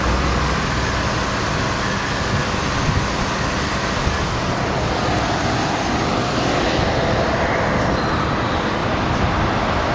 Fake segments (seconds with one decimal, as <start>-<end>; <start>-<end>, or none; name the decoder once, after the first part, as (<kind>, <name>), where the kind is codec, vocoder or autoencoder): none